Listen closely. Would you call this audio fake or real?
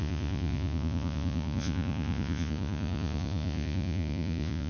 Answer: fake